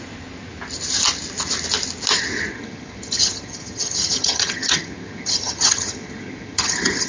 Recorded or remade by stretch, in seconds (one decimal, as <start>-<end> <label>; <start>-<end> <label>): 0.0-2.5 recorded; 2.5-7.1 remade